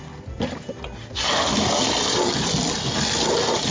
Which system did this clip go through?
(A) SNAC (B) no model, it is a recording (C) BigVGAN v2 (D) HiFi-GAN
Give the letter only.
B